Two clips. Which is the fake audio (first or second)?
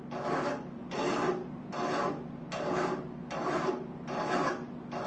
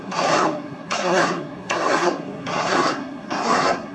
second